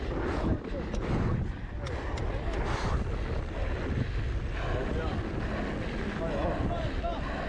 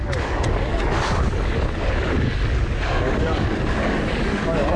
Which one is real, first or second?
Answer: first